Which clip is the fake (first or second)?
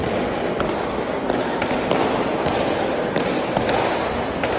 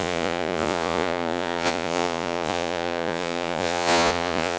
second